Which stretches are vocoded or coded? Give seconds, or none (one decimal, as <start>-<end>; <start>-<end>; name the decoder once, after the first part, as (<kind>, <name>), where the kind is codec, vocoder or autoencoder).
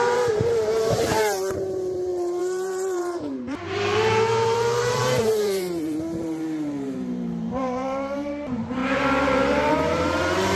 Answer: 0.0-10.6 (vocoder, BigVGAN v2)